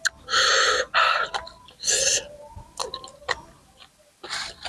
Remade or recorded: recorded